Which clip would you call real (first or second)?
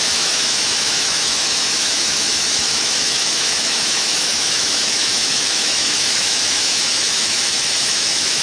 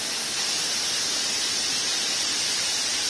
second